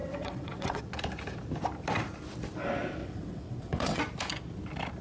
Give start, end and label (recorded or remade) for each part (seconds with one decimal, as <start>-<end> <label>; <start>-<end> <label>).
0.0-0.8 remade; 0.8-3.0 recorded; 3.0-4.0 remade; 4.0-5.0 recorded